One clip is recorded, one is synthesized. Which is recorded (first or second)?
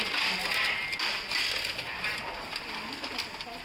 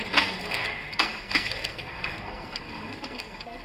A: first